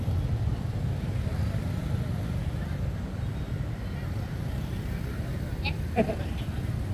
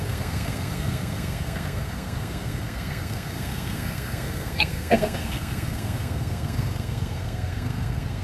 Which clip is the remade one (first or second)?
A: second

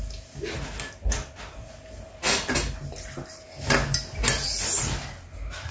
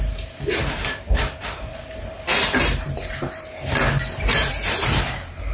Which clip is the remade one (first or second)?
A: second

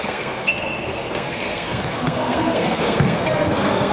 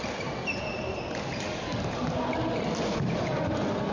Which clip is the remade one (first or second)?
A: first